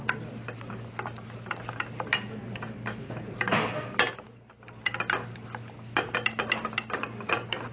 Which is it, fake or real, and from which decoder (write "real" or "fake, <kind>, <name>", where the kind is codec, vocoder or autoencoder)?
real